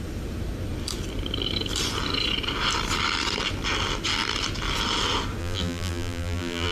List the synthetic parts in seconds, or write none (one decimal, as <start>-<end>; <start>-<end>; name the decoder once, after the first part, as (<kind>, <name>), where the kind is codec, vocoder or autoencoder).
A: 5.4-6.7 (vocoder, BigVGAN v2)